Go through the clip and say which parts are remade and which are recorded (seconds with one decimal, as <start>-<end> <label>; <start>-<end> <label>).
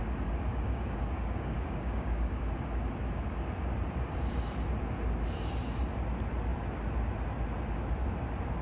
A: 0.0-0.5 recorded; 0.5-2.4 remade; 2.4-8.6 recorded